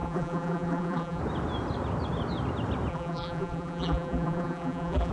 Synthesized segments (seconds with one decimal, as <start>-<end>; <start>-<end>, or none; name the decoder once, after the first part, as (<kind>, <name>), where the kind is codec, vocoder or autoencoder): 0.0-1.2 (vocoder, BigVGAN v2); 2.9-5.1